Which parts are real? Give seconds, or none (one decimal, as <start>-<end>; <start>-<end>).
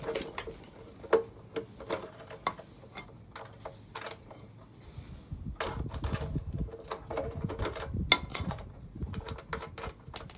0.0-8.3; 9.3-10.4